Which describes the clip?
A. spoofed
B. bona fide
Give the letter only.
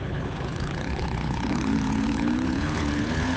A